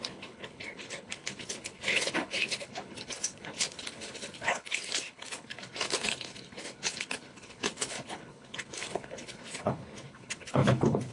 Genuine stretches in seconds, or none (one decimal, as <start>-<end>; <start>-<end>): none